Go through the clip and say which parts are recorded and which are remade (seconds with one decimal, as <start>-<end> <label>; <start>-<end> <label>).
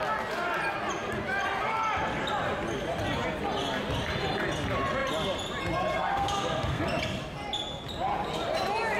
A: 0.0-6.1 recorded; 6.1-6.8 remade; 6.8-9.0 recorded